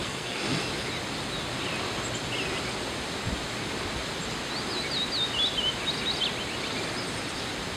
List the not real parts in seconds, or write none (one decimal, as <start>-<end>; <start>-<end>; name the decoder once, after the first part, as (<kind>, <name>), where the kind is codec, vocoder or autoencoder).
0.0-0.6 (codec, SNAC)